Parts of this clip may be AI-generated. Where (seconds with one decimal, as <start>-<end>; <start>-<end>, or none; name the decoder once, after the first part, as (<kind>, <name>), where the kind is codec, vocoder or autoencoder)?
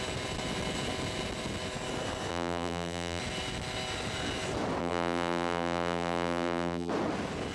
2.3-3.2 (vocoder, BigVGAN v2); 4.8-6.9